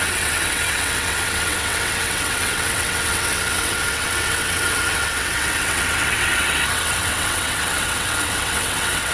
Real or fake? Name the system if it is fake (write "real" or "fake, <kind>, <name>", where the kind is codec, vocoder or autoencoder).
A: fake, vocoder, WaveNeXt